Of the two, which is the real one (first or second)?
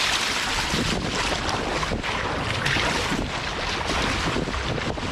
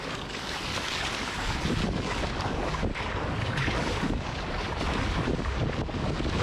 first